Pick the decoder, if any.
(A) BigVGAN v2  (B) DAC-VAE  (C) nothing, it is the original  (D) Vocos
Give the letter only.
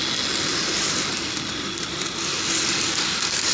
C